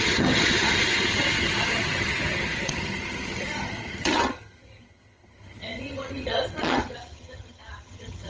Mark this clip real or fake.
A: fake